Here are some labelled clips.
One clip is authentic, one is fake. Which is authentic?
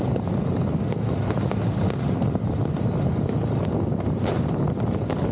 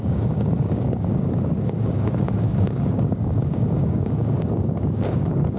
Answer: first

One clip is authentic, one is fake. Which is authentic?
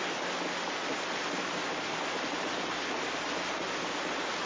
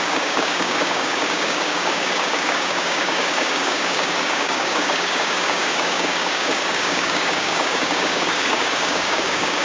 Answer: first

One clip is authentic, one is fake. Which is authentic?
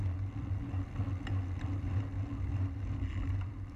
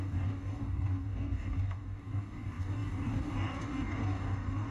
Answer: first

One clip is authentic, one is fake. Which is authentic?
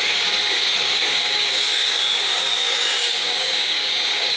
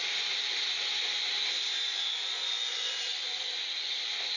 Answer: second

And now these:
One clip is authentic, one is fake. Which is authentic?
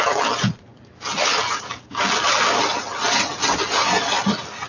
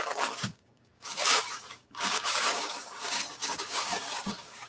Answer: first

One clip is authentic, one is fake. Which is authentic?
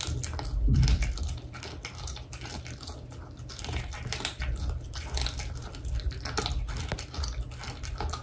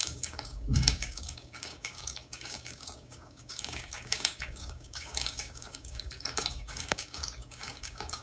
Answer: first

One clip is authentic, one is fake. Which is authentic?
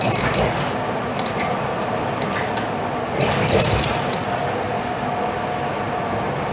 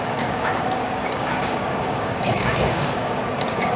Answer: first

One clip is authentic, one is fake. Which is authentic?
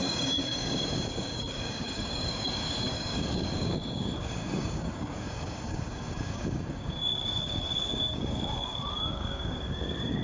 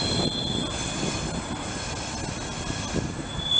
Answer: second